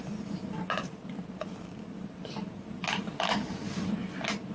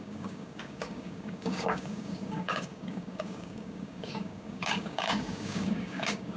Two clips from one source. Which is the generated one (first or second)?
second